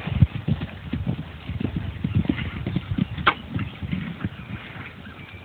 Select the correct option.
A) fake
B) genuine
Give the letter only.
A